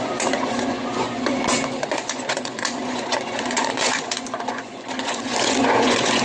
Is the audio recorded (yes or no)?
no